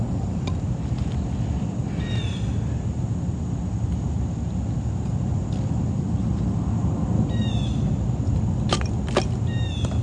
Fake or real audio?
real